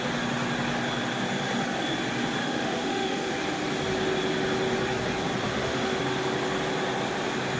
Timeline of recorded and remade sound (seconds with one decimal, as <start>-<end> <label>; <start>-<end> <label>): 0.0-2.4 recorded; 2.4-3.3 remade; 3.3-5.5 recorded; 5.5-6.0 remade; 6.0-7.6 recorded

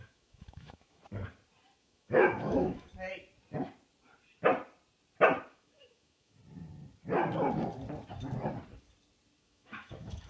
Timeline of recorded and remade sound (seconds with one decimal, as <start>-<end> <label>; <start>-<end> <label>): 0.0-1.0 remade; 1.0-1.8 recorded; 1.8-2.9 remade; 2.9-5.5 recorded; 5.5-6.4 remade; 6.4-9.4 recorded; 9.4-10.3 remade

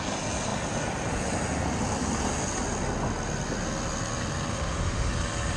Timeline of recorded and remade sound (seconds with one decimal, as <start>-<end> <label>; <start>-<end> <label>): 0.0-4.5 recorded; 4.5-5.1 remade; 5.1-5.6 recorded

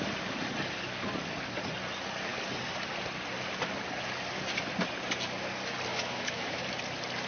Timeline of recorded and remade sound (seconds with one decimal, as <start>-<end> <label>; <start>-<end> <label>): 0.0-5.9 recorded; 5.9-6.6 remade; 6.6-7.3 recorded

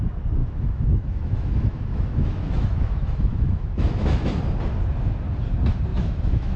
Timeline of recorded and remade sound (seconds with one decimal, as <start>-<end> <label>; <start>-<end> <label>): 0.0-0.4 recorded; 0.4-4.4 remade; 4.4-5.9 recorded; 5.9-6.6 remade

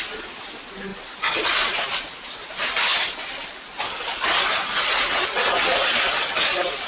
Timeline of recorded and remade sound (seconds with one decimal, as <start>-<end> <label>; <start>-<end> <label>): 0.0-6.9 recorded

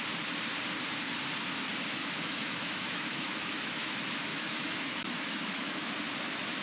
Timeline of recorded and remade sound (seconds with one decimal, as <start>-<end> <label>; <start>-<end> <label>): 0.0-2.0 recorded; 2.0-3.9 remade; 3.9-4.3 recorded; 4.3-6.0 remade; 6.0-6.6 recorded